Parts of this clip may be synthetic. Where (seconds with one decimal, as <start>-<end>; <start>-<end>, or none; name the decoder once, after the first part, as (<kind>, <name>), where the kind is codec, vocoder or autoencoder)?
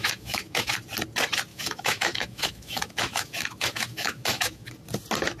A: 0.0-0.7 (autoencoder, DAC-VAE); 1.5-4.7